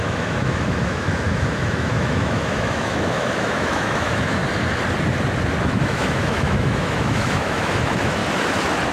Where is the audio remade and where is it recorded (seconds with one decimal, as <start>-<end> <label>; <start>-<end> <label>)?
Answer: 0.0-4.4 remade; 4.4-5.7 recorded; 5.7-8.2 remade; 8.2-8.9 recorded

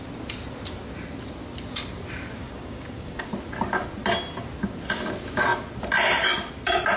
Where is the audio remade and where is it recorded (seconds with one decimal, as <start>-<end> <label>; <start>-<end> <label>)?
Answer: 0.0-2.4 recorded; 2.4-3.3 remade; 3.3-7.0 recorded

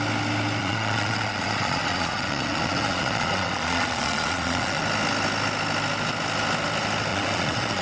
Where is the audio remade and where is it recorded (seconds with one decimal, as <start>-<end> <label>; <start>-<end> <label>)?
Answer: 0.0-0.6 recorded; 0.6-4.8 remade; 4.8-7.1 recorded; 7.1-7.8 remade

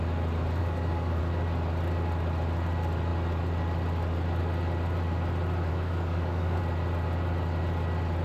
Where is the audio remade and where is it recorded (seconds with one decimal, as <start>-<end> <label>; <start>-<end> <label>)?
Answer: 0.0-0.6 recorded; 0.6-1.2 remade; 1.2-5.7 recorded; 5.7-6.6 remade; 6.6-8.2 recorded